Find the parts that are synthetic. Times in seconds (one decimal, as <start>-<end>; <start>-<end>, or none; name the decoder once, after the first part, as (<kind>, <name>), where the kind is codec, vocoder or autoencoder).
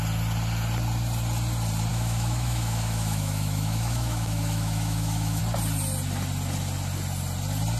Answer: 1.9-5.4 (autoencoder, DAC-VAE)